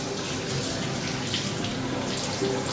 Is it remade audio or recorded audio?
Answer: recorded